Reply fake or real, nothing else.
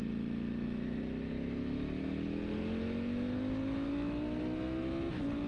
real